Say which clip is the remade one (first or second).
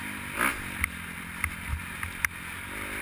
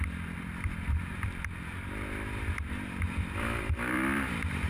second